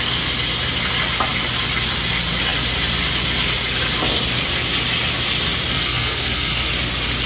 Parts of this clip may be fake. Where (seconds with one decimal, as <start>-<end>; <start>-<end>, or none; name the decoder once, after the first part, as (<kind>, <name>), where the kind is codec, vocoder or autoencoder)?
5.7-6.7 (codec, SNAC)